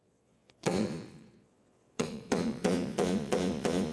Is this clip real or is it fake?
fake